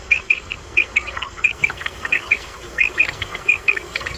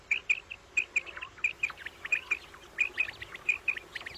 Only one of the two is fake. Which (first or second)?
first